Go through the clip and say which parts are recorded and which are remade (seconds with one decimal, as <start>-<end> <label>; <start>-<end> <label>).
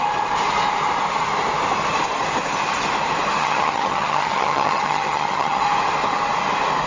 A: 0.0-3.4 recorded; 3.4-5.6 remade; 5.6-6.9 recorded